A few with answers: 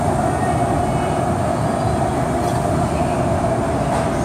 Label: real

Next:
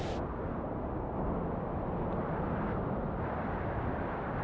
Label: real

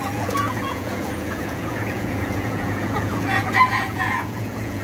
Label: fake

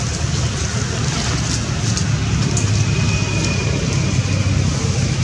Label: real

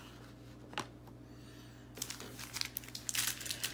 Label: real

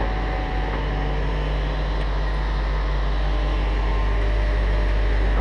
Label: real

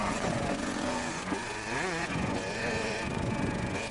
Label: fake